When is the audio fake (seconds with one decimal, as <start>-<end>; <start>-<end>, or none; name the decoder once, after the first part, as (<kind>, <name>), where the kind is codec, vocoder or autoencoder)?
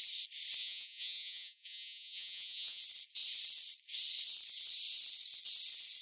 0.6-2.8 (vocoder, Vocos)